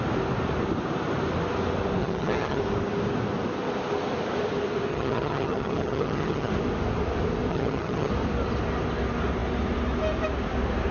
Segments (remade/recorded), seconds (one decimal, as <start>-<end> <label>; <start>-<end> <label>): 0.0-2.0 recorded; 2.0-2.6 remade; 2.6-4.9 recorded; 4.9-6.5 remade; 6.5-7.5 recorded; 7.5-8.1 remade; 8.1-10.9 recorded